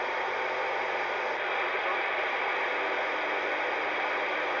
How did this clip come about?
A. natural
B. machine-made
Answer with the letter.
A